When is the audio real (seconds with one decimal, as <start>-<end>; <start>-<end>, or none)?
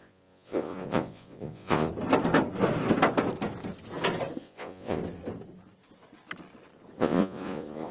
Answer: 1.9-4.4; 5.0-7.0